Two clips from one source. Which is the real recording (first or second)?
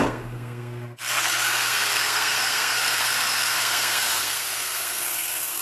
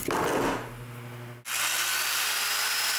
second